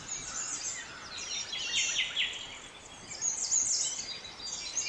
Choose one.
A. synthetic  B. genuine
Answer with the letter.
B